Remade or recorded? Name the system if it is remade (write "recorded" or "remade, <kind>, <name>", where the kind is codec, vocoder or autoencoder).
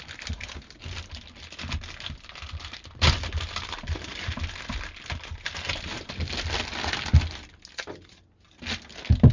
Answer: recorded